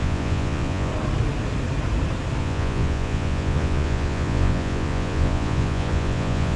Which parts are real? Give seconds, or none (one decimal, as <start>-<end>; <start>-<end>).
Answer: 0.9-2.4